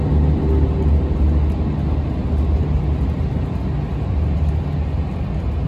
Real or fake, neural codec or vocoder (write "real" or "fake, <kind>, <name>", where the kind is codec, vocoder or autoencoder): real